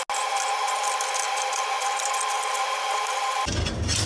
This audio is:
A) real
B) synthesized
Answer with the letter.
A